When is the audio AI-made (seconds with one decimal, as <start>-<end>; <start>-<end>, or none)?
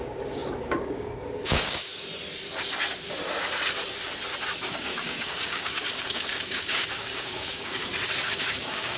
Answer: 0.0-1.9; 4.7-7.8; 8.3-9.0